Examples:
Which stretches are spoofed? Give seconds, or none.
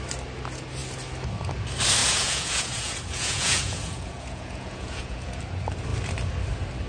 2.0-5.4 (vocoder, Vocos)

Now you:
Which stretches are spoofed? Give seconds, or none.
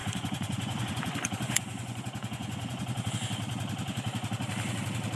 0.0-3.1 (vocoder, Vocos)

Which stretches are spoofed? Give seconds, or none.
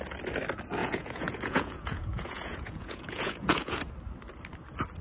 0.8-3.8 (vocoder, Vocos)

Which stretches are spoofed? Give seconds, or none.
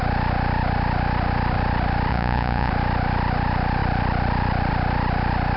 2.1-2.7 (vocoder, Vocos)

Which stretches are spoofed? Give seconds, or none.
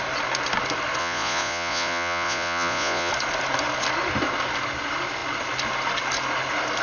1.0-3.1 (vocoder, Vocos)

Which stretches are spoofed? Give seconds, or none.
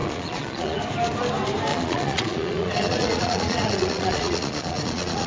0.0-0.8 (vocoder, Vocos); 1.7-5.3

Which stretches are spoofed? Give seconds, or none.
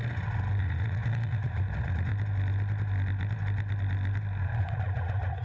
0.6-2.1 (vocoder, Vocos); 4.6-5.4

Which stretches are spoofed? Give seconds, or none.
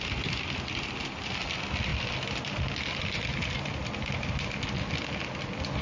none